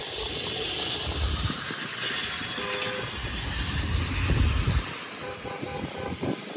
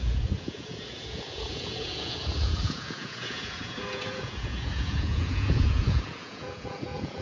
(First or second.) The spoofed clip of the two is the second